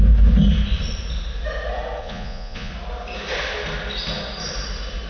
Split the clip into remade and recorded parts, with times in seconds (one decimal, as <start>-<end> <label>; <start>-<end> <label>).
0.0-2.0 recorded; 2.0-2.7 remade; 2.7-5.1 recorded